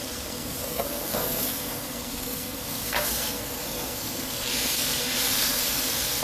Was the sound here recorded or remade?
remade